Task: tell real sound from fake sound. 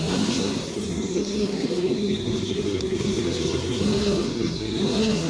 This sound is fake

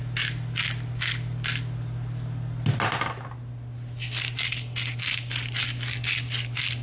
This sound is real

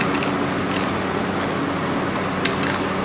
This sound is real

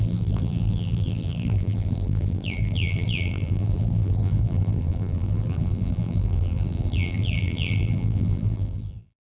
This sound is fake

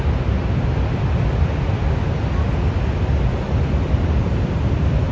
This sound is real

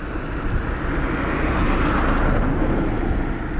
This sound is real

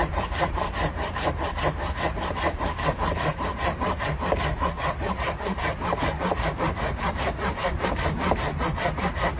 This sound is fake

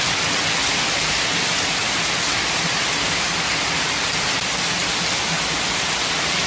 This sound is real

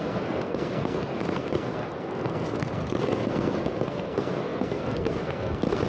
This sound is fake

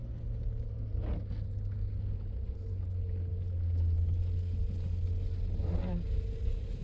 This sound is real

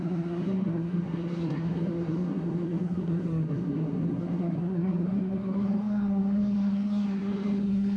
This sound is fake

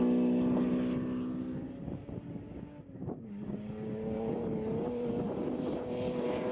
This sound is real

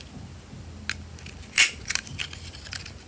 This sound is real